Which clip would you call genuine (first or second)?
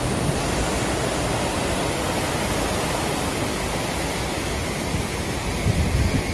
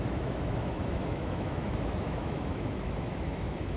first